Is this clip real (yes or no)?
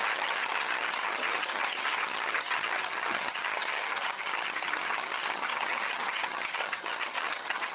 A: no